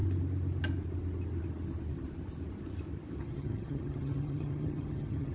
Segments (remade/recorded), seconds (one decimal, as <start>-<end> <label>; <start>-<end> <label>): 0.0-3.2 recorded; 3.2-5.3 remade